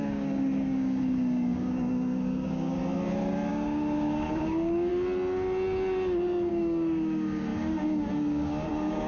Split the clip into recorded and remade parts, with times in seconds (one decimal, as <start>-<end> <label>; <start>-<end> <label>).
0.0-2.8 remade; 2.8-3.5 recorded; 3.5-4.9 remade; 4.9-6.5 recorded; 6.5-9.1 remade